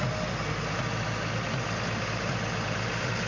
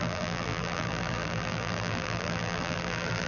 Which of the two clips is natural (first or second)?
first